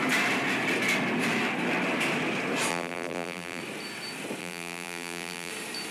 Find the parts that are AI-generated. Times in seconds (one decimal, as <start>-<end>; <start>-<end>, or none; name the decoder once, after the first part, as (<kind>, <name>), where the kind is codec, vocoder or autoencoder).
2.7-3.6 (vocoder, BigVGAN v2); 4.4-5.5